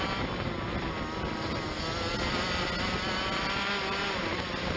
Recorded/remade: recorded